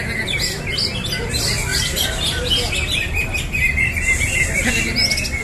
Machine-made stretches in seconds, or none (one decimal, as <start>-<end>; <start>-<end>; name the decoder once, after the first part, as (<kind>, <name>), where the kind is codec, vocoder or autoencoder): none